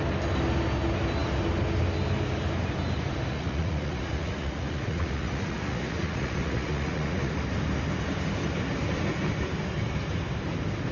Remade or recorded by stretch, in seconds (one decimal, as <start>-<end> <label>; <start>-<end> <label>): 0.0-3.3 recorded; 3.3-7.4 remade; 7.4-10.9 recorded